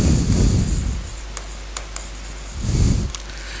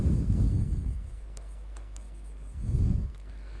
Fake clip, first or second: second